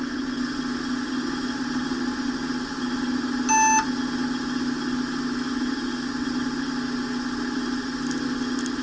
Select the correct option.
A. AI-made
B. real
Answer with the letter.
B